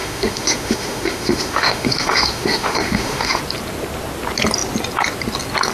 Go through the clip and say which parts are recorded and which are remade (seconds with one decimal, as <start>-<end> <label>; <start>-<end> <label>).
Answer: 0.0-3.4 remade; 3.4-5.7 recorded